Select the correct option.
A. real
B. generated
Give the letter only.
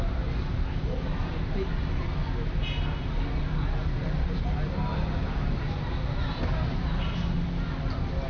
A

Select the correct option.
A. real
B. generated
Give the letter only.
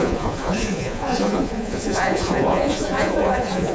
B